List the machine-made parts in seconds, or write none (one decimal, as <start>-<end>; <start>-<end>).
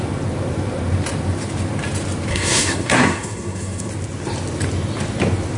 2.3-3.9